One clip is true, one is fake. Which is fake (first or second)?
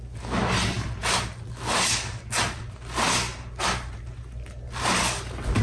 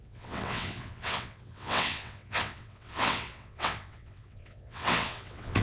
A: second